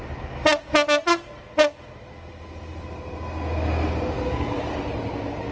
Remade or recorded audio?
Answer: recorded